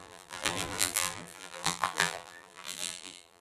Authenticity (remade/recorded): remade